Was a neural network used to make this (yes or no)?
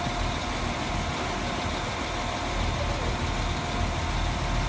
no